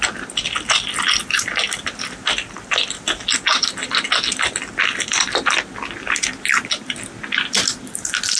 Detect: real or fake real